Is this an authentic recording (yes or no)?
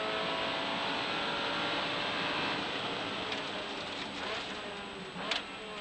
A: yes